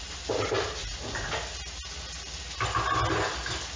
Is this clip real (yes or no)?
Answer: yes